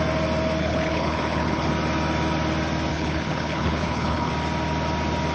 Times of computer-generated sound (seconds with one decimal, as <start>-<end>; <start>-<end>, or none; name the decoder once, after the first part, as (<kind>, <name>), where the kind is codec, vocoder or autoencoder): 0.6-1.7 (codec, HILCodec); 2.9-4.3